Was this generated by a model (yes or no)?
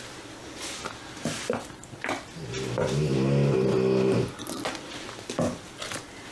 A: no